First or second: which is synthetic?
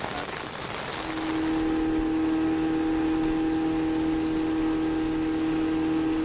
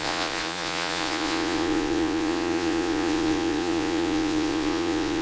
second